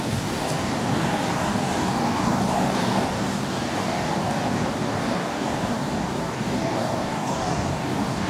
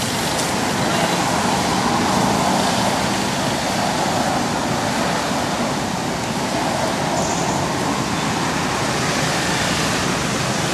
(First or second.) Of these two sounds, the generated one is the first